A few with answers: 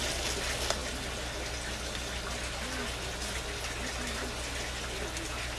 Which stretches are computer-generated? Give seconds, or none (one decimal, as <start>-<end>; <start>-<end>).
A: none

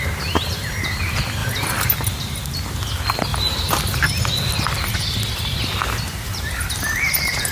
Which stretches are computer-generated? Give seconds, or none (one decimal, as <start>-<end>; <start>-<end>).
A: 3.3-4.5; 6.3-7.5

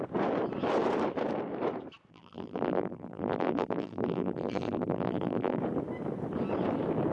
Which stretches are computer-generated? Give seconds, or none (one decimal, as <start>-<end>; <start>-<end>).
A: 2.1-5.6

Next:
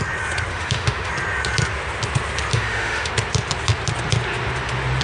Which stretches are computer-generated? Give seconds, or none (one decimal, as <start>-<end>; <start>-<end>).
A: 0.5-1.1; 2.5-3.1

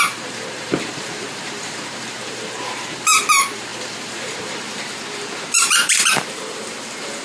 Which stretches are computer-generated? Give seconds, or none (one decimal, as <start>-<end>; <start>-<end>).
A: 0.0-7.2

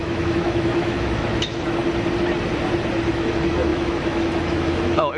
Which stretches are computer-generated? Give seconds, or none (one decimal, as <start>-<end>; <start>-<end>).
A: 0.0-1.8; 3.1-5.2

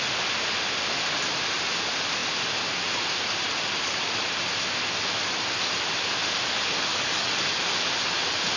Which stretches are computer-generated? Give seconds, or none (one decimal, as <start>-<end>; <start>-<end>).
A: 6.9-7.6